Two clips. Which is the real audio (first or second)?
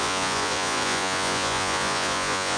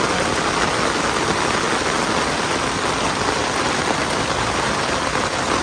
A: second